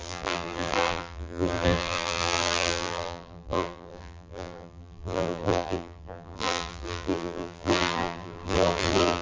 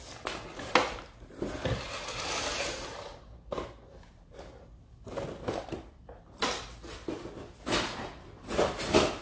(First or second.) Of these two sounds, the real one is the second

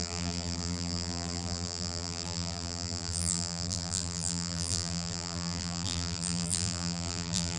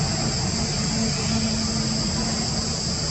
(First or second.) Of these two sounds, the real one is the second